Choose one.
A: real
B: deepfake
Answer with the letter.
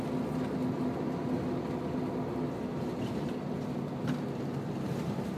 A